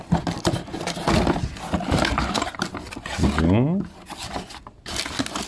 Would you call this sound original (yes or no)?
yes